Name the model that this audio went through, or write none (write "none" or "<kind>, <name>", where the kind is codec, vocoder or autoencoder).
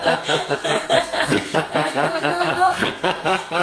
codec, SNAC